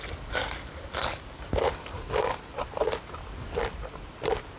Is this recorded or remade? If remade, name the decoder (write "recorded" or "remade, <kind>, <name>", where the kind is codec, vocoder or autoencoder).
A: recorded